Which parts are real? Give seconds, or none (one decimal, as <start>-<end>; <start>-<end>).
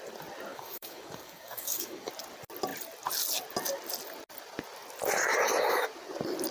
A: 0.0-0.5; 2.1-6.5